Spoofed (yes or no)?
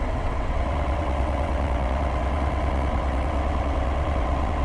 yes